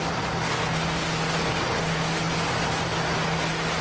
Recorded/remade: recorded